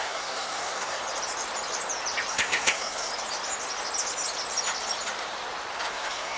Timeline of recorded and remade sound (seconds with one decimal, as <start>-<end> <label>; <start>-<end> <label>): 0.0-1.0 remade; 1.0-2.3 recorded; 2.3-3.1 remade; 3.1-5.9 recorded; 5.9-6.4 remade